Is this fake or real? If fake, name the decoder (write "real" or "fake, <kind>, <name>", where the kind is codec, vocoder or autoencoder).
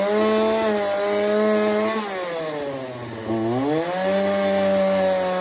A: real